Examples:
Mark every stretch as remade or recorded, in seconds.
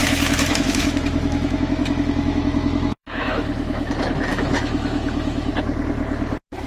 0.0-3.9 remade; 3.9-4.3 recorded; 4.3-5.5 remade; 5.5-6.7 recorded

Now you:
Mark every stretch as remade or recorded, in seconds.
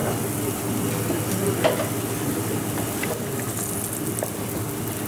0.0-5.1 recorded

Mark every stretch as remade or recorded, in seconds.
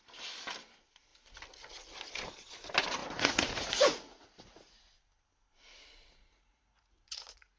0.0-3.0 recorded; 3.0-4.9 remade; 4.9-5.6 recorded; 5.6-7.6 remade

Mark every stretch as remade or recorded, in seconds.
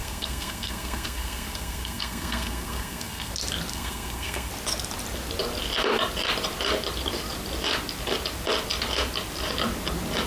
0.0-3.3 remade; 3.3-3.7 recorded; 3.7-4.5 remade; 4.5-10.3 recorded